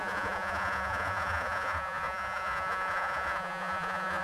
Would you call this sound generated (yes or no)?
yes